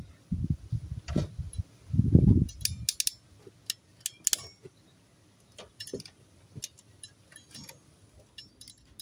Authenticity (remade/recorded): recorded